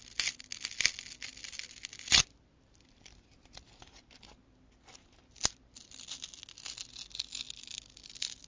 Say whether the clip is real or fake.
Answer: real